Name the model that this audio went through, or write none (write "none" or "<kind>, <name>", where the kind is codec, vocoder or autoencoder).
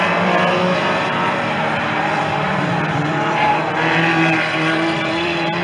vocoder, BigVGAN v2